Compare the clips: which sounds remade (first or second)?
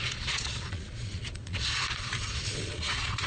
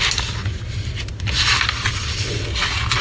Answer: first